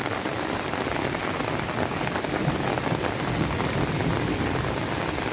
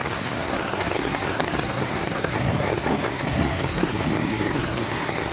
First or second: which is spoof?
second